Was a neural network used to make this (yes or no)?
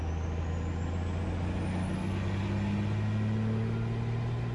no